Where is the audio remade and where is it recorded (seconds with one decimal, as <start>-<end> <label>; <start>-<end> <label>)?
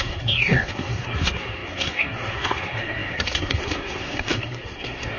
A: 0.0-5.2 remade